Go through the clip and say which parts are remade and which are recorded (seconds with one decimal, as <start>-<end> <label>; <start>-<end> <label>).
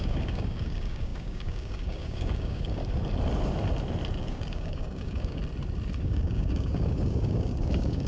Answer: 0.0-2.8 remade; 2.8-4.2 recorded; 4.2-5.4 remade; 5.4-6.0 recorded; 6.0-8.1 remade